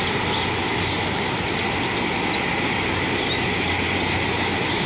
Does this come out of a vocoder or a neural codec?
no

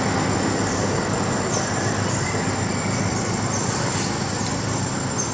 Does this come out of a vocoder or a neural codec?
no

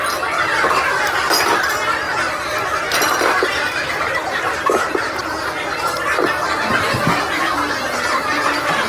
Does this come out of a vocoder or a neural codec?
no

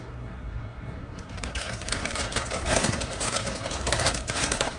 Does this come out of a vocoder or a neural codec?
yes